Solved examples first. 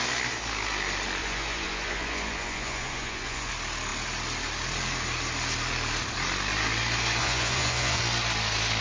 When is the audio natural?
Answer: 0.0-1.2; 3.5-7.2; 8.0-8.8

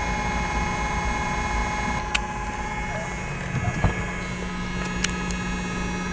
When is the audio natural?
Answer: 0.0-6.1

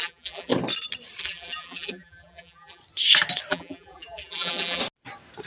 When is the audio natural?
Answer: 0.5-1.2; 2.8-3.5; 4.8-5.5

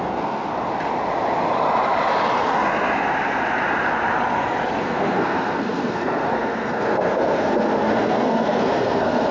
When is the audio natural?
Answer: 0.5-4.8